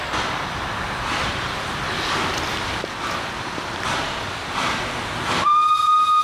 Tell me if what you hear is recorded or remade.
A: recorded